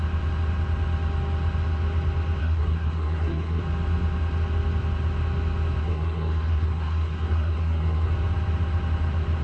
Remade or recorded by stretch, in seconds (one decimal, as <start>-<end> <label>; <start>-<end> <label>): 0.0-2.4 recorded; 2.4-3.6 remade; 3.6-5.8 recorded; 5.8-8.1 remade; 8.1-9.4 recorded